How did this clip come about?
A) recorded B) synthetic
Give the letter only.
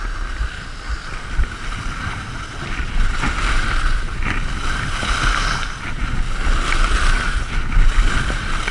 A